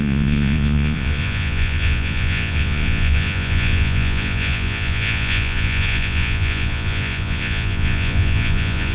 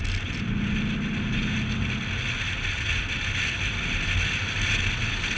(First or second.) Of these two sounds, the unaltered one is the second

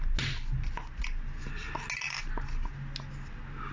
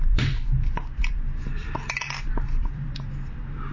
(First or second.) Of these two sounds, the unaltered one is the first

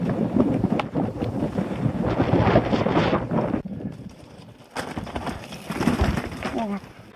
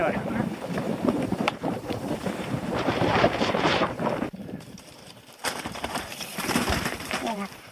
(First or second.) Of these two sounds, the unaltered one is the first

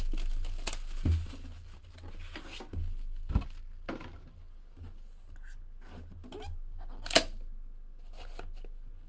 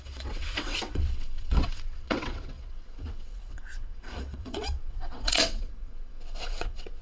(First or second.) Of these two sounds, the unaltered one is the first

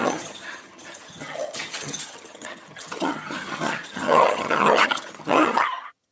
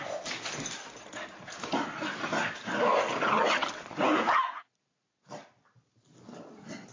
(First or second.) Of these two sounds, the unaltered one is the second